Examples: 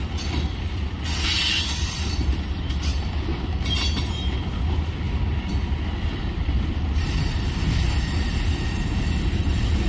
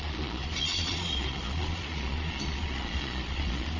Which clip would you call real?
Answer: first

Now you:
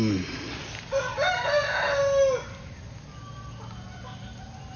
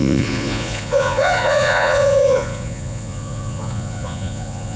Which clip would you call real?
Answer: first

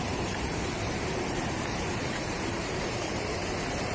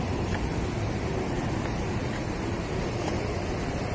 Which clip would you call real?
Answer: second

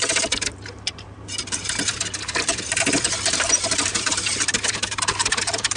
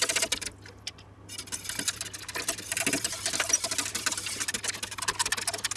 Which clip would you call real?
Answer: second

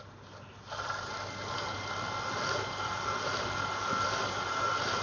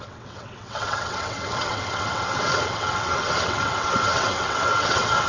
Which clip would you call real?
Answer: first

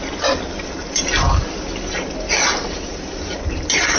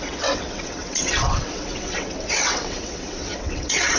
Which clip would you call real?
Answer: first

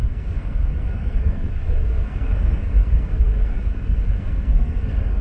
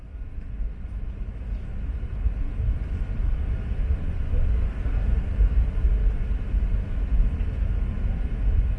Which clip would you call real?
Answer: second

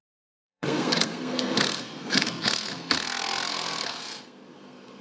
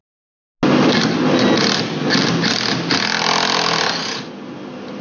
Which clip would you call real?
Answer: second